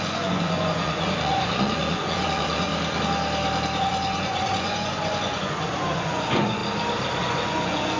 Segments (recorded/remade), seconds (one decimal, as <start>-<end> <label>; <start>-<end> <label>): 0.0-2.7 remade; 2.7-3.8 recorded; 3.8-6.6 remade; 6.6-7.2 recorded; 7.2-8.0 remade

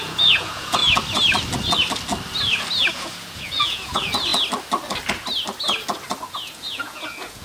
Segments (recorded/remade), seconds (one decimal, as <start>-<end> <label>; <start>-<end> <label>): 0.0-0.8 remade; 0.8-2.9 recorded; 2.9-4.3 remade; 4.3-6.3 recorded; 6.3-7.4 remade